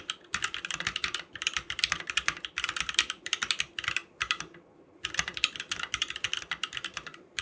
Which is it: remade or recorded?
remade